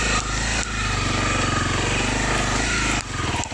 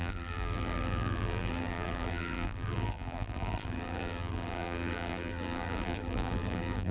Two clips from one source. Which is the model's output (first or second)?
second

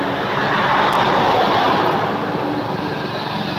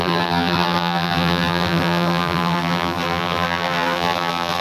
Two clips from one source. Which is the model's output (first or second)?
second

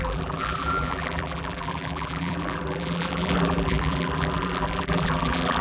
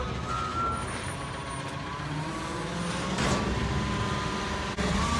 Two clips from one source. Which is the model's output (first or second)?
first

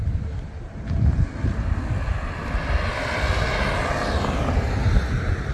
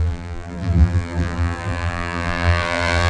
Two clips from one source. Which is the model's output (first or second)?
second